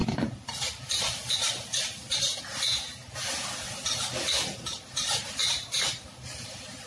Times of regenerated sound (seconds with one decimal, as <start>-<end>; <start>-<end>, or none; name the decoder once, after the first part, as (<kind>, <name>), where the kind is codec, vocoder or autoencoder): 0.0-2.4 (vocoder, BigVGAN v2); 5.4-6.4